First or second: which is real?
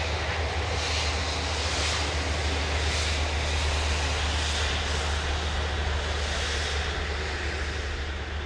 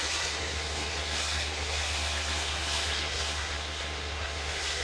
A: first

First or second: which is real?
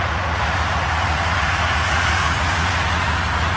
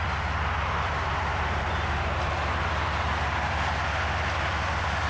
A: second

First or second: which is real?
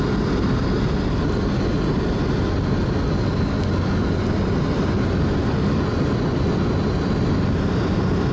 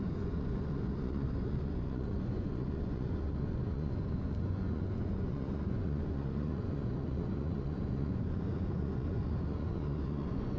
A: first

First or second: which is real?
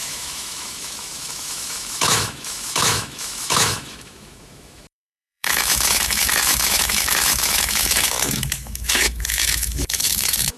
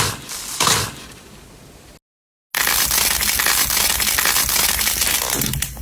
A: second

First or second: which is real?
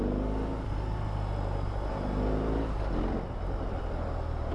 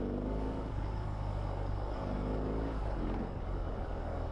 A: first